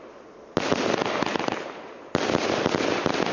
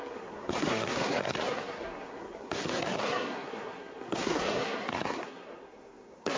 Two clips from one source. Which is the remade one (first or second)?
second